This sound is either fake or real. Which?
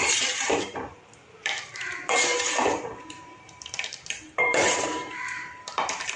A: fake